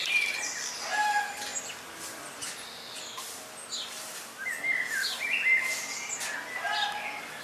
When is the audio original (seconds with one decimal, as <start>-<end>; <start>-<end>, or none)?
0.7-7.4